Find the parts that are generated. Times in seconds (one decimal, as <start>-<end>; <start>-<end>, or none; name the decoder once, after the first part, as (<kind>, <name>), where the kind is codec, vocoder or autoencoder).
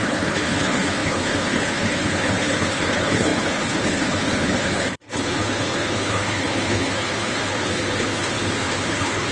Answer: 0.0-9.3 (codec, HILCodec)